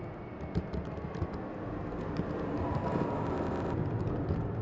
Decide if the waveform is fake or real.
real